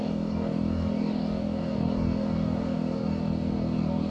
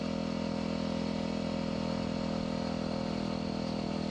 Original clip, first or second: second